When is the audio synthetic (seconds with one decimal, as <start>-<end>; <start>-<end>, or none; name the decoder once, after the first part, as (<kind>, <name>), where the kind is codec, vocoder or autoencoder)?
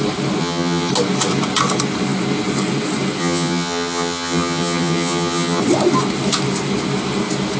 0.4-0.9 (vocoder, HiFi-GAN); 3.2-5.6